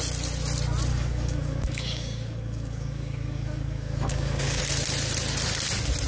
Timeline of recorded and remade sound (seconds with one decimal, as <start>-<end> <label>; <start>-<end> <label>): 0.0-0.9 recorded; 0.9-4.6 remade; 4.6-6.1 recorded